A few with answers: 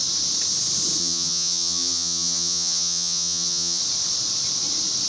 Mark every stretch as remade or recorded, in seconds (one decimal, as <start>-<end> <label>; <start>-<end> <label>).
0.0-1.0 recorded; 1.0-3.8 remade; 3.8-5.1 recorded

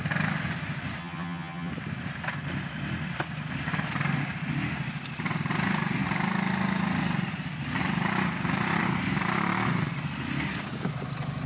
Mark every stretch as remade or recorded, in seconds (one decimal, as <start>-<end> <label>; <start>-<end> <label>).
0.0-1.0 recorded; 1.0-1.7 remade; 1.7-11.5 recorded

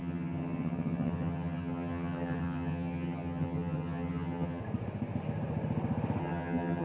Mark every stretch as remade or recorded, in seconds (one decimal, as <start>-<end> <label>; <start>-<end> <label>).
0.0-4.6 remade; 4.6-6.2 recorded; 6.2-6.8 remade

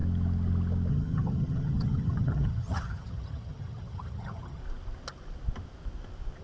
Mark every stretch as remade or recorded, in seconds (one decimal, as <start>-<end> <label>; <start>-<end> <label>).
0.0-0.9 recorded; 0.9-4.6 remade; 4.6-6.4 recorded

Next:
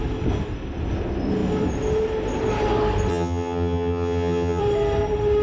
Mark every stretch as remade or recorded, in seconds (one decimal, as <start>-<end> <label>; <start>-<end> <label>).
0.0-3.1 recorded; 3.1-4.6 remade; 4.6-5.4 recorded

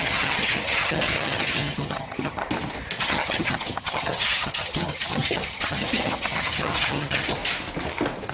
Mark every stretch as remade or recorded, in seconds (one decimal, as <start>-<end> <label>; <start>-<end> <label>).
0.0-2.4 remade; 2.4-3.0 recorded; 3.0-7.4 remade; 7.4-8.3 recorded

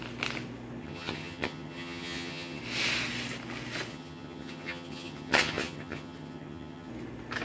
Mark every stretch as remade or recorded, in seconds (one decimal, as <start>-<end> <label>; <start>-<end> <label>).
0.0-0.8 recorded; 0.8-2.6 remade; 2.6-3.9 recorded; 3.9-6.9 remade; 6.9-7.4 recorded

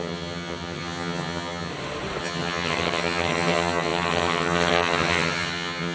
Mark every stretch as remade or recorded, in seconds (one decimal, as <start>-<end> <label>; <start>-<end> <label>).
0.0-1.7 remade; 1.7-2.2 recorded; 2.2-5.9 remade